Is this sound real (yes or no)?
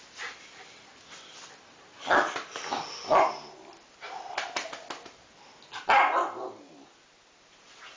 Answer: yes